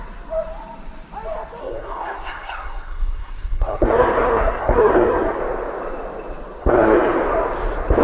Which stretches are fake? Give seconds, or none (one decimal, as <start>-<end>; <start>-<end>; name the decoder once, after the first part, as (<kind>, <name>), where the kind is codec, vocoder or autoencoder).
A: 1.6-5.4 (codec, SNAC); 6.6-7.2